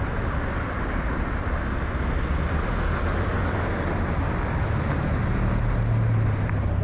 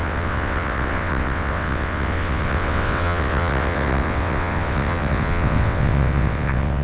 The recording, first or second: first